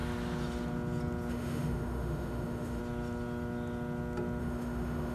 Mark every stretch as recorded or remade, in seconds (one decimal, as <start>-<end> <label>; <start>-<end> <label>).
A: 0.0-1.3 recorded; 1.3-2.8 remade; 2.8-4.4 recorded; 4.4-5.1 remade